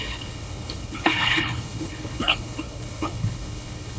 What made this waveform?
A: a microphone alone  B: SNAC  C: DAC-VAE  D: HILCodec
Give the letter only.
D